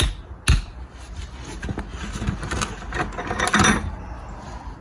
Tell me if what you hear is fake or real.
real